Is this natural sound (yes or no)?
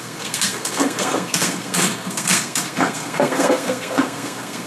no